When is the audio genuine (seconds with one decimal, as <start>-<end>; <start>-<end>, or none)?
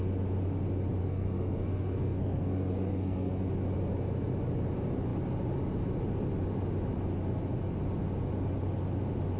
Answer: 0.0-1.0; 3.4-9.4